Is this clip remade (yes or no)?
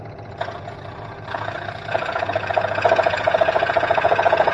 yes